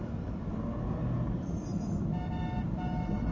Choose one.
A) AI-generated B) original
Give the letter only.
B